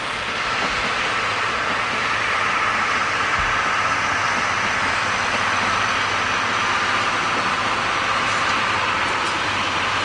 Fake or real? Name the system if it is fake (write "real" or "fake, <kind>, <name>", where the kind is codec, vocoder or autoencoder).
fake, vocoder, BigVGAN v2